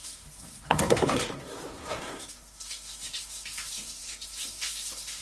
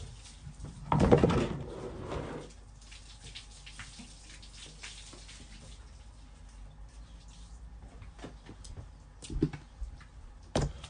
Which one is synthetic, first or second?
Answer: first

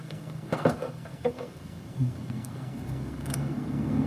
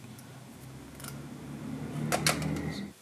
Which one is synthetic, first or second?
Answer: first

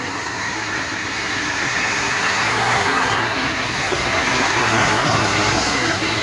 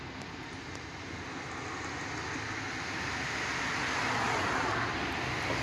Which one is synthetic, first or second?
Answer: first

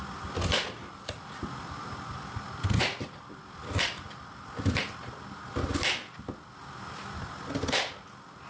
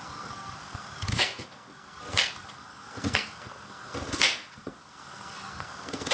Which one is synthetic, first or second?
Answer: second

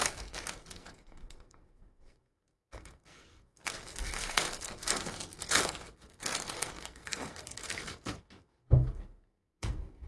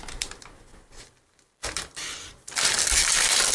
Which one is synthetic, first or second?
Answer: first